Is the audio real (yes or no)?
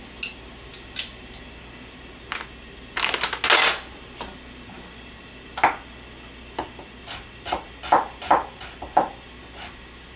yes